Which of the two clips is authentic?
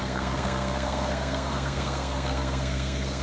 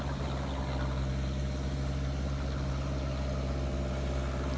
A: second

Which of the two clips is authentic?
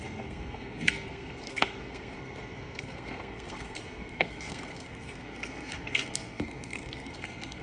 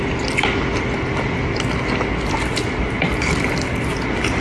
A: second